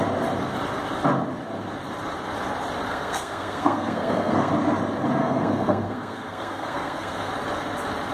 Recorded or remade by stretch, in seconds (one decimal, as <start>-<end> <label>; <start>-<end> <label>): 0.0-2.9 recorded; 2.9-4.5 remade; 4.5-5.2 recorded; 5.2-7.3 remade; 7.3-8.1 recorded